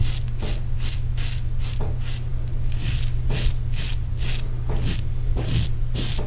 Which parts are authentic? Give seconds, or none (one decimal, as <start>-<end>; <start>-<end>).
0.0-6.3